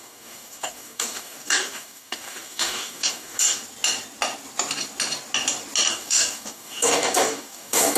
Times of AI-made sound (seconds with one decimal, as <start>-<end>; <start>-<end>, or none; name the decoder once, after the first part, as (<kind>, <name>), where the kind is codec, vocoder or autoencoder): 0.0-3.6 (codec, DAC); 5.9-8.0